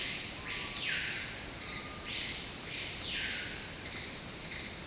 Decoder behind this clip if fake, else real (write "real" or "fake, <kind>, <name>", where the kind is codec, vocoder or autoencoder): real